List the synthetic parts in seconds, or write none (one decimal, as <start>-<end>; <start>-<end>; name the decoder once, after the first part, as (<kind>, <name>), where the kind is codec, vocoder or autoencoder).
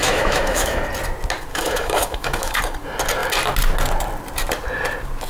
0.0-0.8 (autoencoder, DAC-VAE); 1.5-2.6